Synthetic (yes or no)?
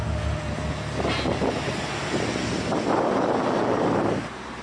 no